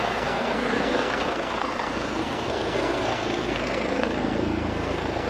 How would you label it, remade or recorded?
remade